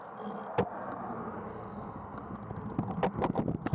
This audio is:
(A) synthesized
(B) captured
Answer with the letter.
B